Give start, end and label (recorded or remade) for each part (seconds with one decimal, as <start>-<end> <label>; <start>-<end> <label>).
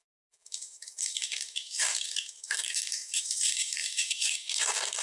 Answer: 0.0-5.0 remade